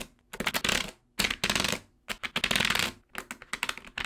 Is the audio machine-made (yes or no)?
no